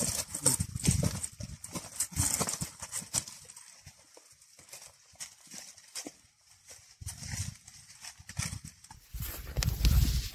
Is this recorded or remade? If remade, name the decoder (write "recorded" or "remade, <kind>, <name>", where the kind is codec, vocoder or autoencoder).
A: recorded